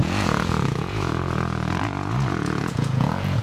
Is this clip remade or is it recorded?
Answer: remade